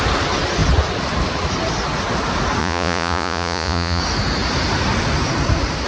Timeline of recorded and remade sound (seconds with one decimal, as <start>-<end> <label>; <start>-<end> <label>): 0.0-2.6 recorded; 2.6-4.0 remade; 4.0-5.9 recorded